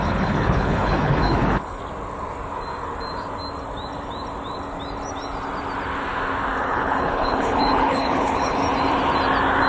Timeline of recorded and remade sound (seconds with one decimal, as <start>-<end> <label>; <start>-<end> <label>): 0.0-1.8 remade; 1.8-6.6 recorded; 6.6-8.6 remade; 8.6-9.7 recorded